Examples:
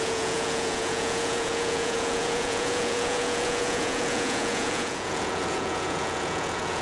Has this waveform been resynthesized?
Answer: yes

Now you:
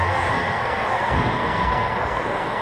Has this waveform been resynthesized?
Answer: yes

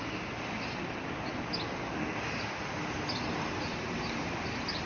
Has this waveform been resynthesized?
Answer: no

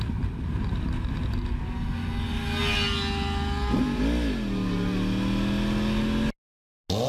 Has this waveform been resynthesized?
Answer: no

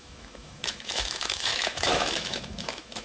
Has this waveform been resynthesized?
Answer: yes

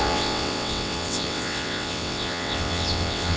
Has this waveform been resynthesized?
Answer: yes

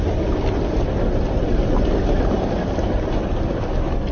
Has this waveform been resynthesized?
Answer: no